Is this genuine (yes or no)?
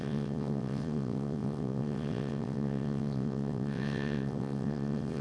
no